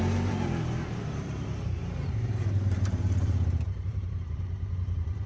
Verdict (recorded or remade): remade